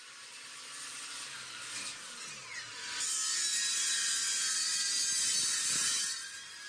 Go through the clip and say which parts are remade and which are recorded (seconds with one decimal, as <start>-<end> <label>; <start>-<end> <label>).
0.0-6.7 recorded